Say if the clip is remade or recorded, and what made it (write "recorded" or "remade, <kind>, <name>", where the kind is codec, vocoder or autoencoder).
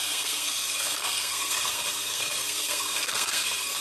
remade, codec, SNAC